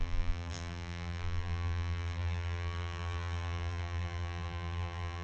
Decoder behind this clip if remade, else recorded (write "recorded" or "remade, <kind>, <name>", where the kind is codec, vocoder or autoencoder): remade, vocoder, BigVGAN v2